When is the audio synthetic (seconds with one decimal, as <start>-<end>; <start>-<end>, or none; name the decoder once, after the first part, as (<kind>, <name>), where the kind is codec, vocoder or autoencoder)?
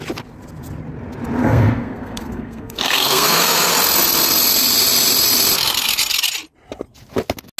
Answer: 1.4-3.7 (codec, SNAC)